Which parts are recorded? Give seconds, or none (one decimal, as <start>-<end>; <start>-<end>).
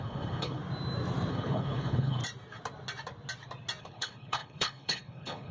0.6-1.3; 2.2-3.8